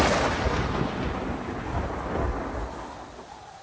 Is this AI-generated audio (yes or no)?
no